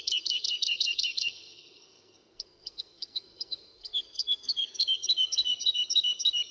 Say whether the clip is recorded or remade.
remade